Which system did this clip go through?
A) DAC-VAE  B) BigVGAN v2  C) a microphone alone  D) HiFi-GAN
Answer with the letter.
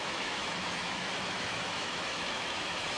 A